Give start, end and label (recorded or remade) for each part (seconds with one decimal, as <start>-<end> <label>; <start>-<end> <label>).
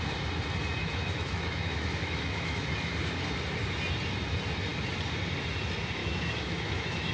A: 0.0-0.8 recorded; 0.8-2.9 remade; 2.9-6.0 recorded; 6.0-7.1 remade